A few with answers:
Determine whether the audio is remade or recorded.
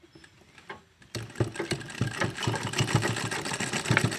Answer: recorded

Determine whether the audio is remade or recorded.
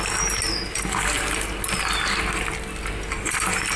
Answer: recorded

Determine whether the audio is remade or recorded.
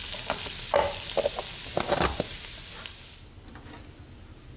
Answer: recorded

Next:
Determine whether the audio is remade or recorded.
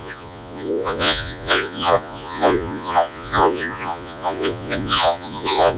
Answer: remade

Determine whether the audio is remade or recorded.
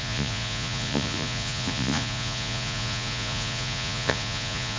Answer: remade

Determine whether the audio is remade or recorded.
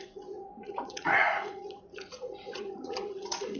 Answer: remade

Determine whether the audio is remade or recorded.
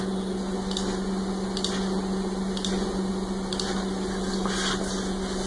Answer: recorded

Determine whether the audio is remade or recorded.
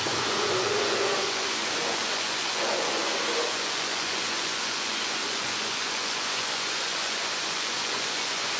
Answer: remade